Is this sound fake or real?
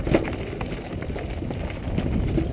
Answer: real